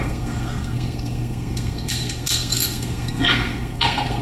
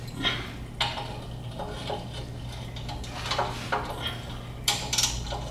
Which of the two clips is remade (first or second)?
first